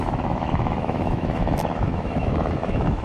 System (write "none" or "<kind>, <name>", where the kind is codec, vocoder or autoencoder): autoencoder, DAC-VAE